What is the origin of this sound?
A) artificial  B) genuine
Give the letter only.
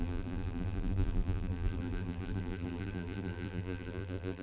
A